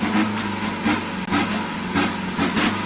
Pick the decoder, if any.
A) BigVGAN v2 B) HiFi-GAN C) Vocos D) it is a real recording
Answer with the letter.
D